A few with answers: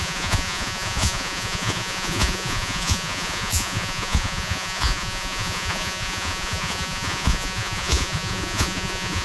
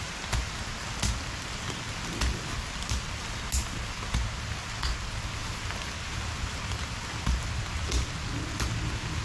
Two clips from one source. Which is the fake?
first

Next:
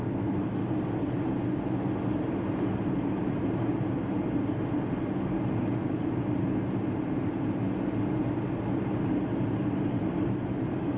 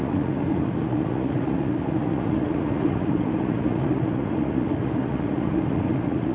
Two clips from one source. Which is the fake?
second